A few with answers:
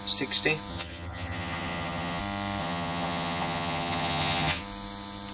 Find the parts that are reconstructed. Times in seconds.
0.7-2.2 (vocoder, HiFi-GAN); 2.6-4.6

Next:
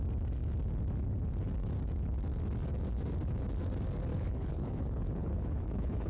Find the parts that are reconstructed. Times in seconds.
4.1-6.1 (codec, HILCodec)

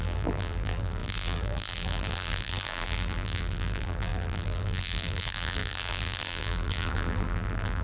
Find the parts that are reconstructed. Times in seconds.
0.0-7.8 (vocoder, BigVGAN v2)

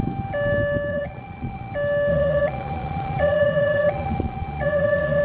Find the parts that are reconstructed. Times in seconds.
0.9-1.7 (vocoder, Vocos); 2.1-5.2

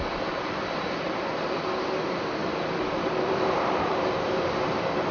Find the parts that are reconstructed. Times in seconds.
0.0-2.4 (vocoder, BigVGAN v2); 3.0-5.1